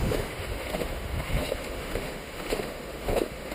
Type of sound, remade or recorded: remade